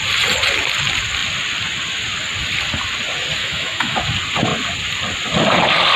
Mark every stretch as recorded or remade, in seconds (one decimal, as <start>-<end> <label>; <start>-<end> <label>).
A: 0.0-3.4 recorded; 3.4-4.0 remade; 4.0-6.0 recorded